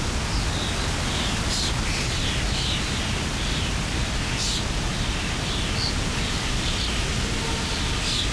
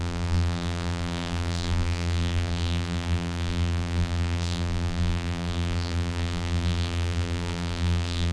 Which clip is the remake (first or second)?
second